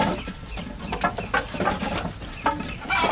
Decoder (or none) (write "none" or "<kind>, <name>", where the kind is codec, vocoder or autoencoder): none